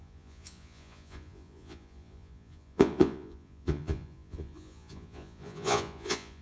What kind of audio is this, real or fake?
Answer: fake